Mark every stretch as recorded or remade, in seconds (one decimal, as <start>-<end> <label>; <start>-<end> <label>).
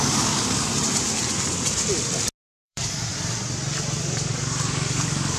0.0-0.7 remade; 0.7-2.5 recorded; 2.5-3.1 remade; 3.1-4.0 recorded; 4.0-5.4 remade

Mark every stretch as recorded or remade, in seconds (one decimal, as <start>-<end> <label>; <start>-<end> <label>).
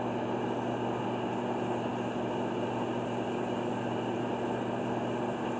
0.0-5.6 recorded